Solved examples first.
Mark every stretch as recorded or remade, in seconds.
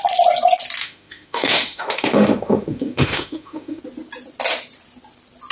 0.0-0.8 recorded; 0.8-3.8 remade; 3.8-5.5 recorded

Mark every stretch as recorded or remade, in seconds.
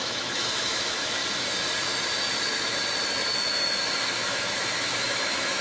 0.0-1.2 remade; 1.2-2.3 recorded; 2.3-2.7 remade; 2.7-3.3 recorded; 3.3-5.6 remade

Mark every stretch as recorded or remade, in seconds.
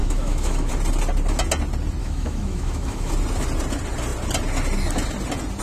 0.0-0.7 remade; 0.7-2.0 recorded; 2.0-3.1 remade; 3.1-5.6 recorded